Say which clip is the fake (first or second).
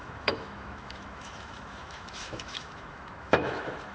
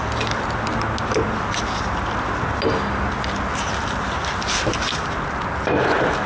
first